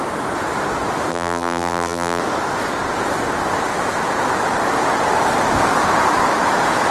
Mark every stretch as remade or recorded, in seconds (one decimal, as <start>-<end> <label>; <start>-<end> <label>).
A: 0.0-1.1 recorded; 1.1-2.2 remade; 2.2-6.9 recorded